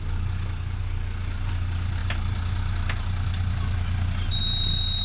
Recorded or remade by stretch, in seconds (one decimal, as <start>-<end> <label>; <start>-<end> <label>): 0.0-5.0 recorded